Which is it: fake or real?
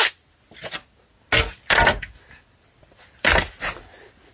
real